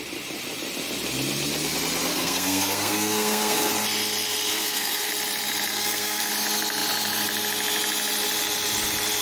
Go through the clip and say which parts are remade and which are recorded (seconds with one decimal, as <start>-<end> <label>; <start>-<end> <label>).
0.0-2.1 recorded; 2.1-3.7 remade; 3.7-4.5 recorded; 4.5-5.1 remade; 5.1-5.7 recorded; 5.7-6.3 remade; 6.3-9.2 recorded